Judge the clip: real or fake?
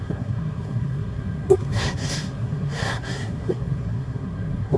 fake